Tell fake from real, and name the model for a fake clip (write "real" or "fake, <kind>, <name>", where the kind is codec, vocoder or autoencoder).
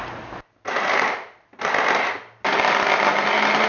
real